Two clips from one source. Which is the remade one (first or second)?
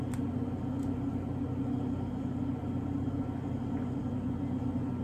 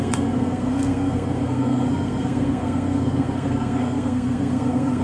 second